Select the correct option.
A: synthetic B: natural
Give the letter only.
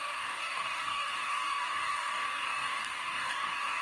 A